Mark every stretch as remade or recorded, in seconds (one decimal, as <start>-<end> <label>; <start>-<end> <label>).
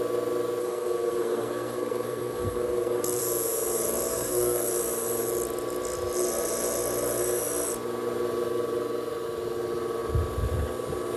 0.0-0.6 recorded; 0.6-3.2 remade; 3.2-4.1 recorded; 4.1-4.7 remade; 4.7-11.2 recorded